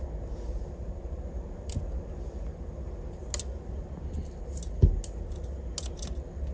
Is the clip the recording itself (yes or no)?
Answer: yes